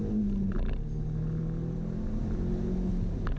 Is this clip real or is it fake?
real